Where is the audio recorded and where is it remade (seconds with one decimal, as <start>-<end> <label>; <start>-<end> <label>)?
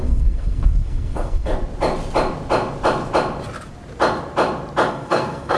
0.0-1.5 remade; 1.5-4.9 recorded; 4.9-5.6 remade